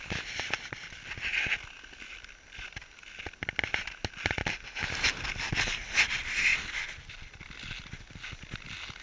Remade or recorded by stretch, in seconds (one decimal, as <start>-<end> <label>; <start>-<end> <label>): 0.0-9.0 recorded